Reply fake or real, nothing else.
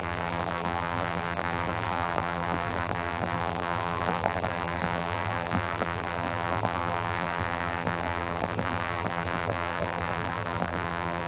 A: fake